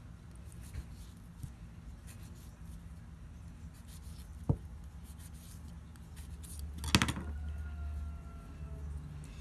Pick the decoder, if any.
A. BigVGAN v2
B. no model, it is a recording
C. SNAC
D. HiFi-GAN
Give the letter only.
B